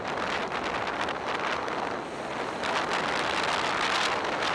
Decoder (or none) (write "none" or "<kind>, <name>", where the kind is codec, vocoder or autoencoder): none